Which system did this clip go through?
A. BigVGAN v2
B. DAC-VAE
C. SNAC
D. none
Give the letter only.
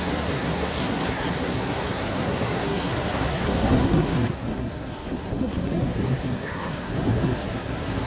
C